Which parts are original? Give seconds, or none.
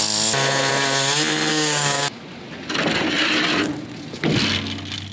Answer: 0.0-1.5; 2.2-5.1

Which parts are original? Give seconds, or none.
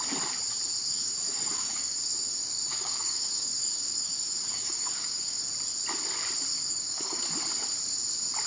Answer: 0.0-0.8; 5.5-6.5; 7.2-8.5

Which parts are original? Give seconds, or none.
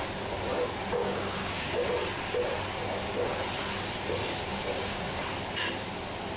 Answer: 0.0-1.0; 1.7-4.5; 5.2-6.4